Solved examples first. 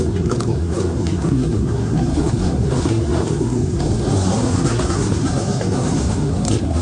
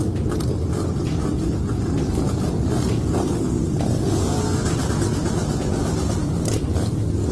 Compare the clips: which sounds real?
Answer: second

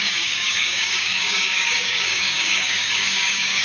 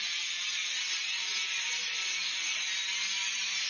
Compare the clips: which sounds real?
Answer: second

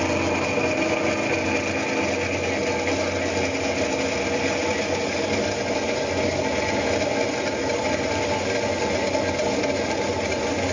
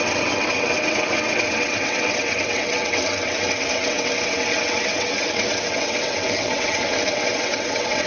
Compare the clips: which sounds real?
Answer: first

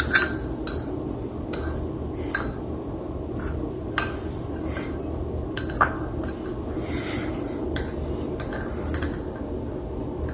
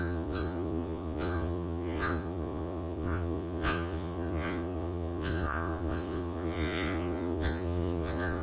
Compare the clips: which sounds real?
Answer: first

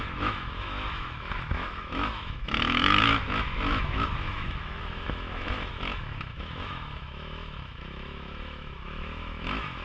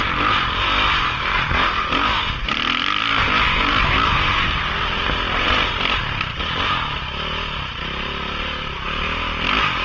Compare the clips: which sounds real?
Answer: second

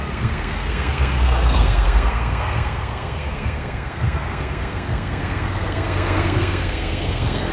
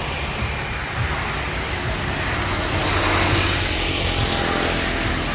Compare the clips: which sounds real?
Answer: second